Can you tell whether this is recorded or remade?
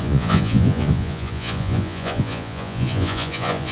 remade